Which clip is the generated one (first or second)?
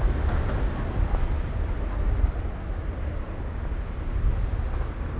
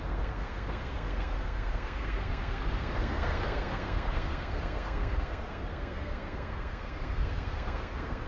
second